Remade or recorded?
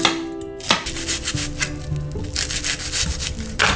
recorded